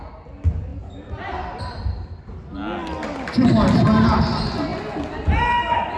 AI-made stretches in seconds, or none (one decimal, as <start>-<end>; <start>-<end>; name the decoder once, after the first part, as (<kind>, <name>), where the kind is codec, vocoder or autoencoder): none